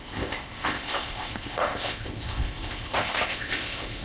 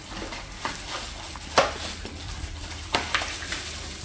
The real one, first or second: second